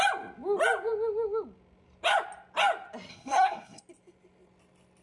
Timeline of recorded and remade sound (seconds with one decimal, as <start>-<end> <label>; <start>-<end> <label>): 0.0-3.1 recorded; 3.1-3.8 remade; 3.8-5.0 recorded